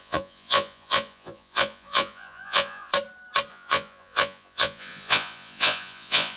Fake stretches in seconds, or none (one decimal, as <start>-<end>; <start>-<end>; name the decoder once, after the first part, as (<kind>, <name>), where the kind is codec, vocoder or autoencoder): 0.0-2.9 (vocoder, Vocos); 3.5-6.4

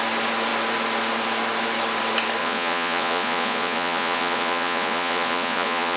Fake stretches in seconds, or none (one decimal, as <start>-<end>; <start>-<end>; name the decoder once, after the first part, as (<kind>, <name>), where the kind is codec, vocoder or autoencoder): 2.4-6.0 (vocoder, Vocos)

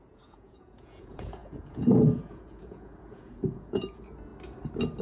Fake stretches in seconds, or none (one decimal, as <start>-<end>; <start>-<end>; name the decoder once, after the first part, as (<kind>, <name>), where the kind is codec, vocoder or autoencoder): 0.0-4.3 (vocoder, Vocos)

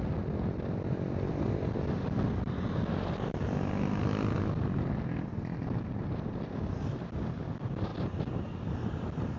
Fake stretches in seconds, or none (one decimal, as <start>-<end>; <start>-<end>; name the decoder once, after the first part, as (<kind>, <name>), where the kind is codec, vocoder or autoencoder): none

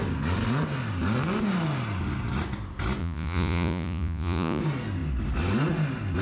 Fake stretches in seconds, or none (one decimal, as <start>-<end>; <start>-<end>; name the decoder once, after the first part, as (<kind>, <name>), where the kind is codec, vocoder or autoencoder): 3.0-4.6 (vocoder, Vocos)